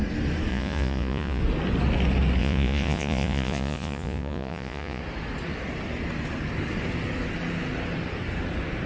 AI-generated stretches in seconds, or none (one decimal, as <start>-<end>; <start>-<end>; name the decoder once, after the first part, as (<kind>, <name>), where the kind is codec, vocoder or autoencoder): 0.5-1.4 (vocoder, Vocos); 2.4-5.0